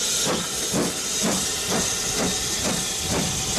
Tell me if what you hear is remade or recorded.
recorded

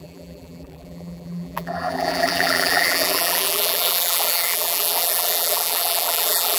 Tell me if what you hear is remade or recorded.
remade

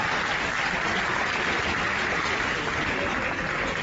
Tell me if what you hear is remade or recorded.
recorded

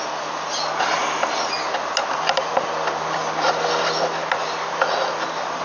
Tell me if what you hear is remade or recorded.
recorded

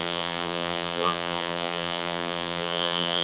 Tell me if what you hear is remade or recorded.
remade